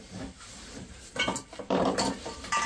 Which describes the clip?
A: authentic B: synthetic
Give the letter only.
B